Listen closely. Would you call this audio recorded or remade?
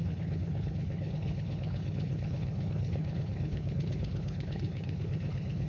remade